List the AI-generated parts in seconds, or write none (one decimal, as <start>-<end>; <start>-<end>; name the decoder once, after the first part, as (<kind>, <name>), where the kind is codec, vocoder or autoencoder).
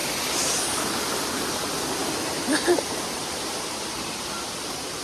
2.0-4.3 (vocoder, BigVGAN v2)